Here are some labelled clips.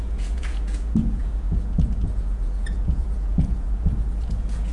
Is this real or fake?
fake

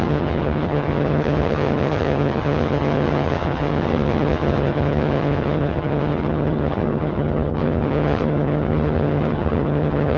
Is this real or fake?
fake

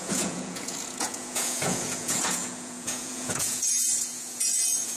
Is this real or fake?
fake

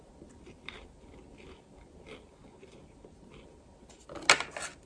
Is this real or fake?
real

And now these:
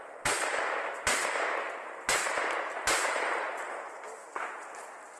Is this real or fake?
real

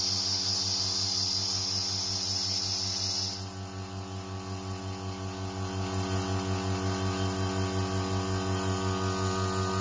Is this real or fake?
real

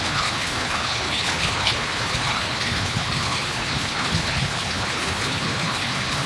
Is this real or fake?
fake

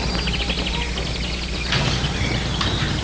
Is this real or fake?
real